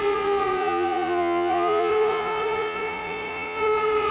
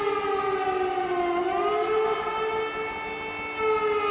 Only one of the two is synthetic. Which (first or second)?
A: first